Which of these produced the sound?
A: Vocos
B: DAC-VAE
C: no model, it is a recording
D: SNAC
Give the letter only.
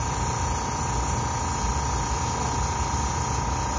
C